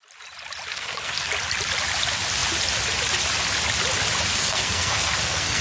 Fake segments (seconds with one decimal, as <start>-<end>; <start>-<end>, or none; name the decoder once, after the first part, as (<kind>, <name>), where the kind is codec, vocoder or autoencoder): 0.7-1.3 (codec, SNAC); 4.3-5.6